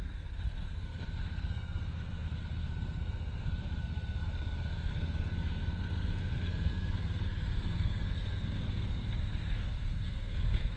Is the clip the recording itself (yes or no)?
no